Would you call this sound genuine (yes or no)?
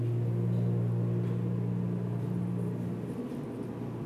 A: yes